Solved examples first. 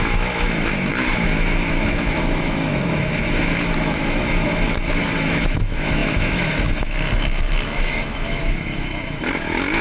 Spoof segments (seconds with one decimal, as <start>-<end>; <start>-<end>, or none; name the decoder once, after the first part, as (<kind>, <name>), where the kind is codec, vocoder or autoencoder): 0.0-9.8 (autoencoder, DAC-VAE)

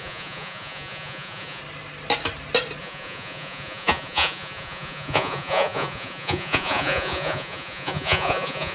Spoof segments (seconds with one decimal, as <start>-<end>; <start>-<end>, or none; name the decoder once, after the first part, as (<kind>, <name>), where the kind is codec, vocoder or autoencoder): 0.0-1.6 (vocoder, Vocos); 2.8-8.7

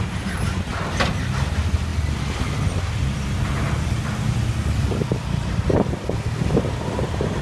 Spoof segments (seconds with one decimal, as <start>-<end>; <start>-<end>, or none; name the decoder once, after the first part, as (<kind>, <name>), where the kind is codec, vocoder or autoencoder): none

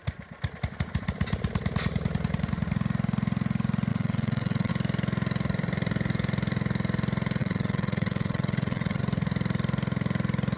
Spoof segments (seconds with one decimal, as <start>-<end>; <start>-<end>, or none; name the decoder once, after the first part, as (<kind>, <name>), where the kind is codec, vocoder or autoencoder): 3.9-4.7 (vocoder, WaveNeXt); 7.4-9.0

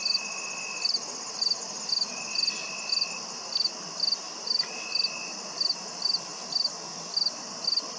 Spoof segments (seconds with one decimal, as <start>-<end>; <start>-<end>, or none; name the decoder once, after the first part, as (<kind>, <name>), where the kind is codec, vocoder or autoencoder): none